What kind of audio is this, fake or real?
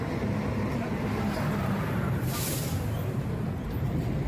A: fake